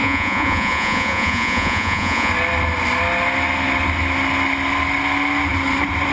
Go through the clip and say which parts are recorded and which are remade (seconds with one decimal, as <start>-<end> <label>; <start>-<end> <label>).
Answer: 0.0-2.3 remade; 2.3-6.1 recorded